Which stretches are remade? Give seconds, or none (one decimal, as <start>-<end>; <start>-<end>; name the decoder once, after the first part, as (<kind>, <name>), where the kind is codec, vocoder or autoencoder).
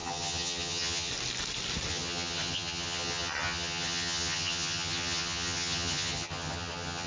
0.0-1.1 (vocoder, HiFi-GAN); 1.9-7.1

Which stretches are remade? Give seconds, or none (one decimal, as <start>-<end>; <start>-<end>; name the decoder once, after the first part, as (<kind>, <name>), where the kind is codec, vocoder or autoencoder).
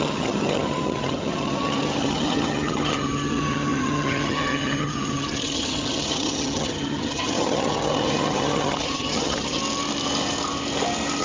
0.0-9.6 (vocoder, HiFi-GAN)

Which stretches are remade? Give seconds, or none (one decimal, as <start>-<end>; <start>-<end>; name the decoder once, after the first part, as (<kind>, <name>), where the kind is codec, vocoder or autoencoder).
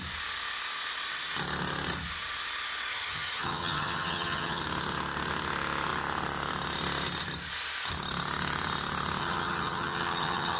2.9-4.6 (vocoder, HiFi-GAN); 9.2-10.6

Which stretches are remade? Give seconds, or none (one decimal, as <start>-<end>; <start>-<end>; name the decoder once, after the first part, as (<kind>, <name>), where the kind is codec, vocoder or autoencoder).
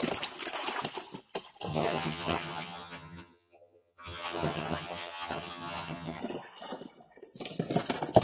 1.7-6.2 (vocoder, HiFi-GAN)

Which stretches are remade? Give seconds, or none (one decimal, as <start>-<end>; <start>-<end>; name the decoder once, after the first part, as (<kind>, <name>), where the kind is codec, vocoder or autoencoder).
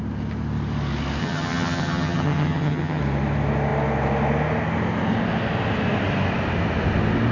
1.2-3.0 (vocoder, HiFi-GAN)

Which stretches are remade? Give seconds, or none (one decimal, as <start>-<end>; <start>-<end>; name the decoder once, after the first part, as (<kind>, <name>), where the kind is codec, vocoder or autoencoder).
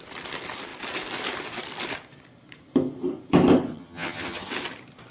3.7-4.5 (vocoder, HiFi-GAN)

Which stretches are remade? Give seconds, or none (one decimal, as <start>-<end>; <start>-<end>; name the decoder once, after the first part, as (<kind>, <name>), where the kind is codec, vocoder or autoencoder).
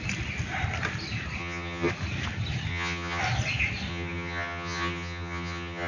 1.4-1.9 (vocoder, HiFi-GAN); 2.7-3.2; 3.9-5.9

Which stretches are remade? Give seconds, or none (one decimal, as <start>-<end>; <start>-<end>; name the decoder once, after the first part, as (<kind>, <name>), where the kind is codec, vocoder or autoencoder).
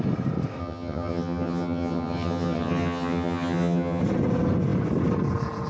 0.6-4.0 (vocoder, HiFi-GAN)